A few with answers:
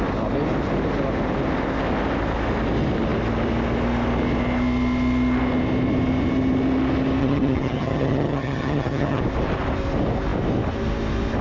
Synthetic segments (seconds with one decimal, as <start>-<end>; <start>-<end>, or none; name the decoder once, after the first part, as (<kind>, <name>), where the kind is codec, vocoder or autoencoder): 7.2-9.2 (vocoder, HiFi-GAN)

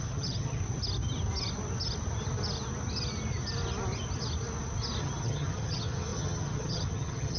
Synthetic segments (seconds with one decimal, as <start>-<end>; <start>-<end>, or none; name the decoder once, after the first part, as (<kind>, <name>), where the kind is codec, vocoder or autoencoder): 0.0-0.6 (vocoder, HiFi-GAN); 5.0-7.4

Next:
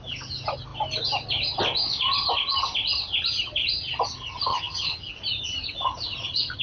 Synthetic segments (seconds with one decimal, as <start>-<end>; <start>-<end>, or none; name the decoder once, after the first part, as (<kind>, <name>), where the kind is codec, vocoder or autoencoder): 4.5-5.1 (vocoder, HiFi-GAN)

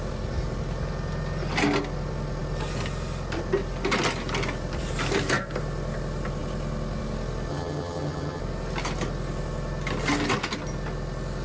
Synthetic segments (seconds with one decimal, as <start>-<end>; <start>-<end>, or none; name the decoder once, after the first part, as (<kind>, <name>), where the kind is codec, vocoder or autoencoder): 7.5-8.4 (vocoder, HiFi-GAN)

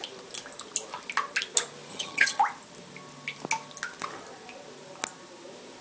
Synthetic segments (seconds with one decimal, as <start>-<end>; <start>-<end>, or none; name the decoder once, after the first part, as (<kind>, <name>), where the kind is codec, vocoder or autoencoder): 1.9-2.4 (vocoder, HiFi-GAN)

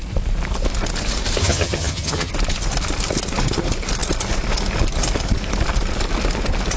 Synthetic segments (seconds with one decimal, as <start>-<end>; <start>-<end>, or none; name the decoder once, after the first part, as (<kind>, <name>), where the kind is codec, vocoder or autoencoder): 1.4-2.3 (vocoder, HiFi-GAN)

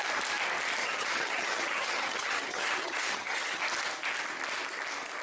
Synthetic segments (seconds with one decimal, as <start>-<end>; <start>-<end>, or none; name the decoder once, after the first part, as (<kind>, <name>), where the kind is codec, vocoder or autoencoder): 0.8-3.6 (vocoder, HiFi-GAN)